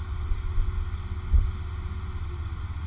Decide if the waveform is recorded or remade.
recorded